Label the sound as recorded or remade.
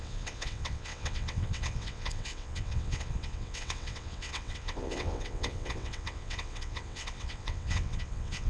remade